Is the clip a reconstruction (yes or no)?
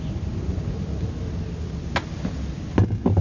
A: no